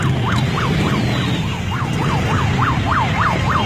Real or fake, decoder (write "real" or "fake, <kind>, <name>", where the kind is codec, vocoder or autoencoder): real